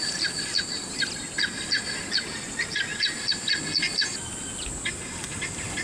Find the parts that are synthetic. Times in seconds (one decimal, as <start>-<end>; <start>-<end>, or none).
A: none